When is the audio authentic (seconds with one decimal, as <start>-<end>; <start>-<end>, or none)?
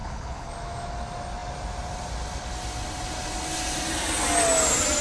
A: 0.5-5.0